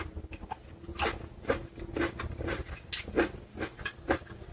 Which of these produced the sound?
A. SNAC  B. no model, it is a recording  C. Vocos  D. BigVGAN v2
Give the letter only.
B